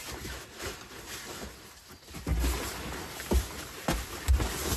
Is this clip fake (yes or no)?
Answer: no